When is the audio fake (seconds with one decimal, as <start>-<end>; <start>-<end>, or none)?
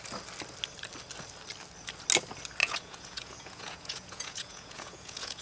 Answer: 2.6-5.4